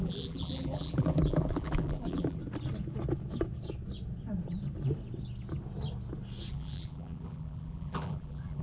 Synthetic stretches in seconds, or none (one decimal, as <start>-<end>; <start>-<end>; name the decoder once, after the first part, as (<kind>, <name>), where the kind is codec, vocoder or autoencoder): 0.0-2.4 (vocoder, BigVGAN v2); 6.5-8.6